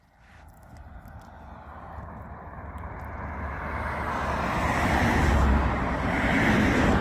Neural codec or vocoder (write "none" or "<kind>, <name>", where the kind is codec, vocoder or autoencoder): none